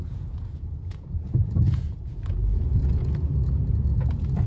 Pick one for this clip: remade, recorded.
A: remade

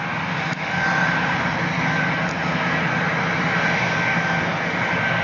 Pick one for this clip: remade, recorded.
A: recorded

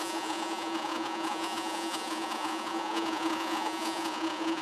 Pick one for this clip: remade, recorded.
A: remade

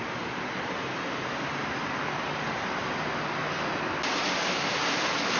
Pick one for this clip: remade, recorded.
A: recorded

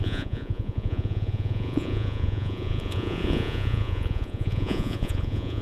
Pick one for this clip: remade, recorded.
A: remade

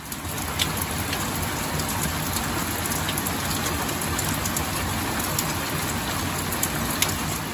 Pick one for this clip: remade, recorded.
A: recorded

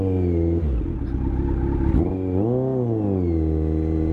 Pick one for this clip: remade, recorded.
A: recorded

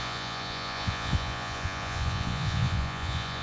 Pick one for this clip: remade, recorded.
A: remade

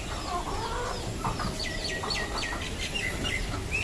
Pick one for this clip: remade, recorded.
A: recorded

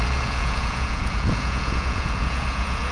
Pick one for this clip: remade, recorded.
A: remade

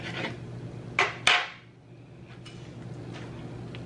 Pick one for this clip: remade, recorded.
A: recorded